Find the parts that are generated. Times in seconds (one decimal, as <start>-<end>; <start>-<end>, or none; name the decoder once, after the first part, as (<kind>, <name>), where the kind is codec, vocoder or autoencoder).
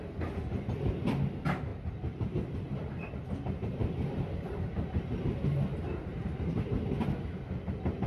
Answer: 1.7-2.9 (vocoder, BigVGAN v2); 6.1-6.7